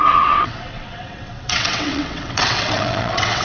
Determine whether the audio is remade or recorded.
remade